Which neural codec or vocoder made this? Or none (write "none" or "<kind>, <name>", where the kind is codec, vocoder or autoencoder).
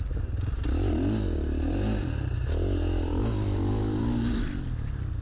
none